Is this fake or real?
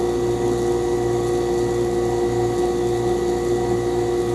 real